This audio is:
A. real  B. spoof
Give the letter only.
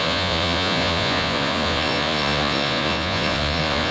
B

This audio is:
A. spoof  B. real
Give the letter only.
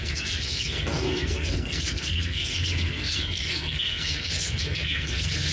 A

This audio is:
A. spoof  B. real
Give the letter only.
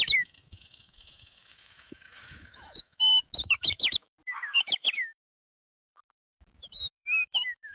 A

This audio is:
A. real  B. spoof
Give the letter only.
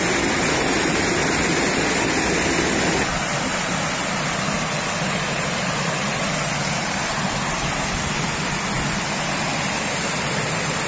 A